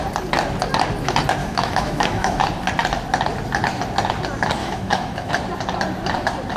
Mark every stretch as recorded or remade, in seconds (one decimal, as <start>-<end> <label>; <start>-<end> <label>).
0.0-1.4 recorded; 1.4-2.4 remade; 2.4-4.6 recorded; 4.6-5.3 remade; 5.3-6.6 recorded